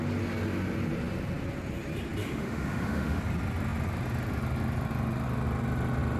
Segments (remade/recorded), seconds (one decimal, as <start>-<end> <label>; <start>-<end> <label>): 0.0-2.2 recorded; 2.2-3.2 remade; 3.2-6.2 recorded